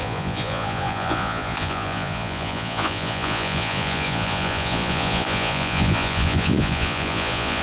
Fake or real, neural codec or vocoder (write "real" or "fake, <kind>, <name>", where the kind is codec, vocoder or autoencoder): fake, vocoder, Vocos